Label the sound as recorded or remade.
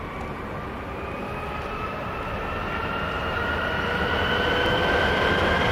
recorded